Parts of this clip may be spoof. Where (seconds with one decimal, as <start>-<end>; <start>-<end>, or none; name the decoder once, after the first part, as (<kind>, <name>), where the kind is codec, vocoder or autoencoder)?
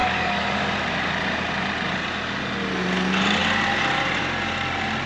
0.0-0.6 (codec, DAC)